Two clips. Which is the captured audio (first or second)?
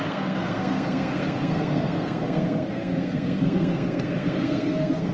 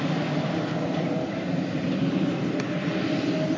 second